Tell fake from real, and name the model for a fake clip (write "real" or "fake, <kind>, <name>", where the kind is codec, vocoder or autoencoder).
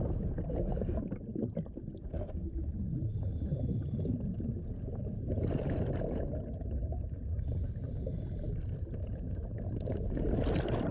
real